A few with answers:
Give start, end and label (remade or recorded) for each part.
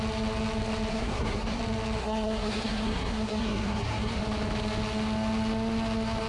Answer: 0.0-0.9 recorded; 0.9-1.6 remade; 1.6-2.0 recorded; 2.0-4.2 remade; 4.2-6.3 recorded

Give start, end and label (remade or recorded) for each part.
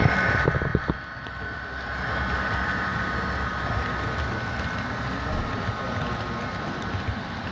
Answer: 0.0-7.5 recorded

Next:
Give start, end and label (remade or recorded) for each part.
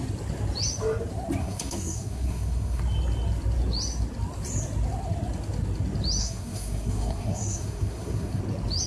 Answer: 0.0-1.4 recorded; 1.4-2.8 remade; 2.8-6.2 recorded; 6.2-8.4 remade; 8.4-8.9 recorded